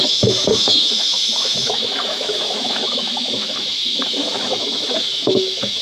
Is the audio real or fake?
fake